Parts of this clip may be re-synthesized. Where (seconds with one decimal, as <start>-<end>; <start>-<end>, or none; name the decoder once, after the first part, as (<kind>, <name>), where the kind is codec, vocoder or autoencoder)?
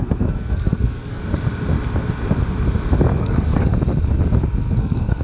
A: 0.0-1.2 (codec, SNAC); 3.2-3.7; 4.8-5.2